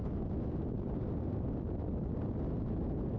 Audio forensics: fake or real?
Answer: real